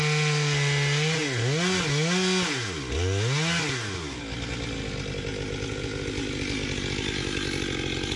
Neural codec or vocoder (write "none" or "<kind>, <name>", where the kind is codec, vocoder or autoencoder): none